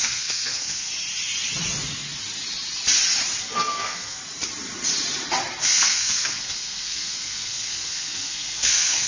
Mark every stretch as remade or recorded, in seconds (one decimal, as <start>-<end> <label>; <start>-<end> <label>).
0.0-0.9 remade; 0.9-3.4 recorded; 3.4-4.2 remade; 4.2-5.6 recorded; 5.6-9.1 remade